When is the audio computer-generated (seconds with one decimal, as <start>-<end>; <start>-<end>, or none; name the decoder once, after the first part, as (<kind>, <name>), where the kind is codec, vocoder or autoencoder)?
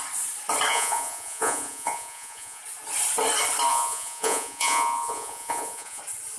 0.7-2.6 (vocoder, Vocos); 3.7-6.0